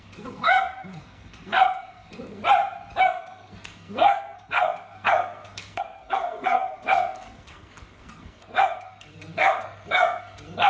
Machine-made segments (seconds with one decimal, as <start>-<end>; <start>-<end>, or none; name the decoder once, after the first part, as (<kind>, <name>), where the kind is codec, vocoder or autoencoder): 0.0-2.4 (codec, SNAC); 3.0-10.7